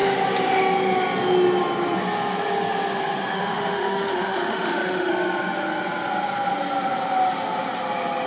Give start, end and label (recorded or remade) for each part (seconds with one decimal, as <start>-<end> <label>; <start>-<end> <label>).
0.0-3.3 recorded; 3.3-5.1 remade; 5.1-8.3 recorded